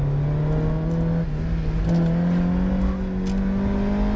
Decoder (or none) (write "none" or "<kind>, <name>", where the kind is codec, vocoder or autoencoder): none